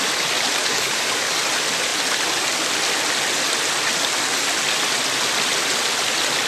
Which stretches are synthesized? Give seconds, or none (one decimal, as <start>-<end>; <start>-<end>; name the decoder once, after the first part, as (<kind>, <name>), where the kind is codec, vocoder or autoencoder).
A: 0.6-1.4 (codec, DAC)